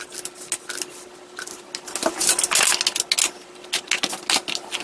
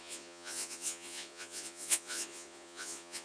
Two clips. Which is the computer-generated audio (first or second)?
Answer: second